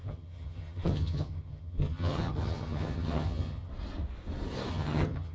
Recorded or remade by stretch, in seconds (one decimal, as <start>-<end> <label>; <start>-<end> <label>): 0.0-3.7 remade; 3.7-4.7 recorded; 4.7-5.3 remade